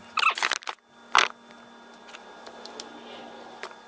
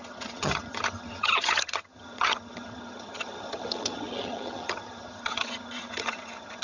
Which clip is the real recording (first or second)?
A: first